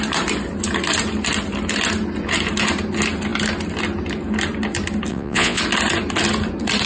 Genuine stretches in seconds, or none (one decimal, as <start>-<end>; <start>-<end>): 0.0-5.1; 5.6-6.9